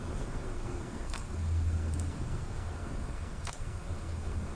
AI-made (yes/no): yes